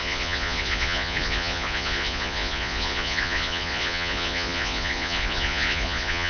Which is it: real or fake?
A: fake